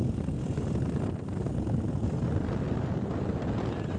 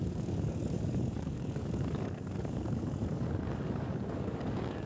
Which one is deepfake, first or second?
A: second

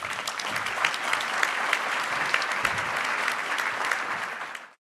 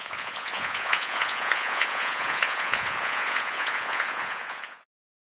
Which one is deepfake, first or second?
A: second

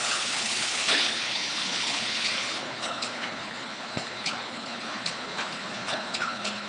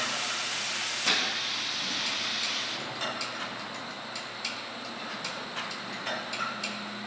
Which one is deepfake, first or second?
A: first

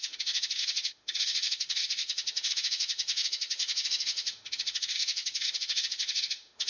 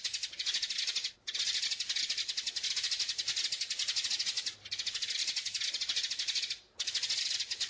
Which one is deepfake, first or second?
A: first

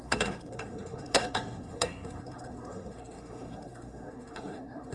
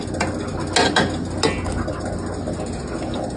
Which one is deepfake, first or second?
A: first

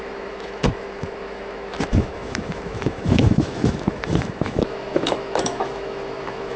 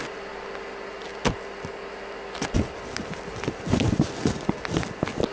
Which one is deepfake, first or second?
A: first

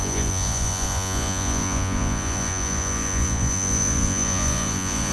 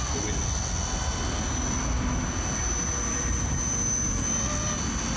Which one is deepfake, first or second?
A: first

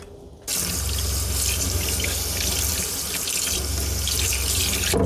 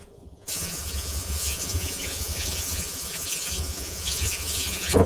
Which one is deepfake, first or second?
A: second